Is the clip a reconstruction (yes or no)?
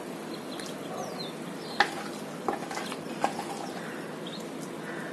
no